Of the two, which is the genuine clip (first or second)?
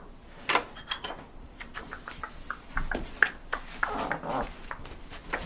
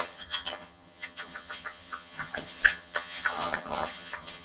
first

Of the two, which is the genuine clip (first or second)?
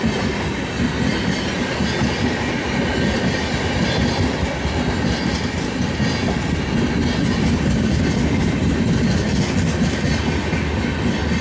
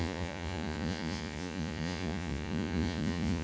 first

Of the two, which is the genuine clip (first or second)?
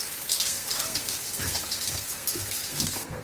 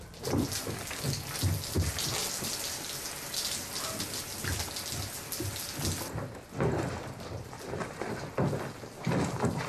second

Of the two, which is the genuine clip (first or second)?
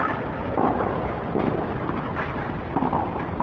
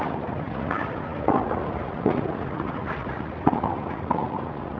first